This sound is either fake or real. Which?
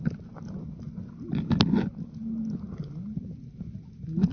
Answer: real